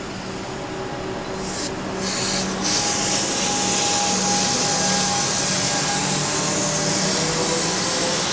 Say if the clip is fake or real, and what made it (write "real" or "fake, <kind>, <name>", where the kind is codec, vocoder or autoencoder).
real